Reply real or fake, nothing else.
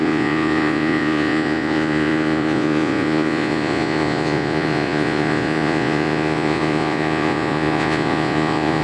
fake